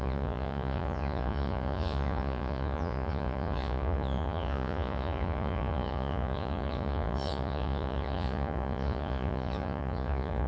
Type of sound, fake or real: fake